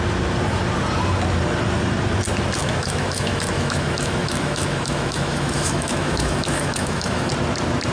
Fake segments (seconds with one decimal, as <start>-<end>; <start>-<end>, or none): 2.6-7.3